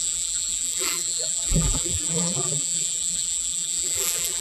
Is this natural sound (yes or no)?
no